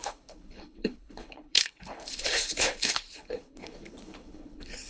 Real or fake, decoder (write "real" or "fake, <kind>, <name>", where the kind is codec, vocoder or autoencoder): fake, codec, HILCodec